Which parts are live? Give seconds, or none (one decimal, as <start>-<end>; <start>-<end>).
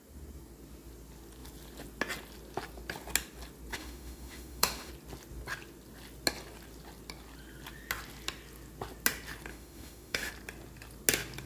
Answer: 0.0-3.7; 4.9-9.5; 10.3-11.5